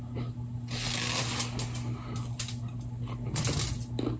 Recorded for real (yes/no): yes